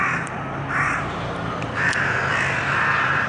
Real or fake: real